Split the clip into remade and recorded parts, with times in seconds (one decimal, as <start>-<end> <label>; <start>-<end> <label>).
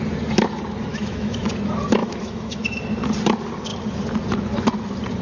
0.0-0.9 recorded; 0.9-1.5 remade; 1.5-2.0 recorded; 2.0-2.8 remade; 2.8-5.2 recorded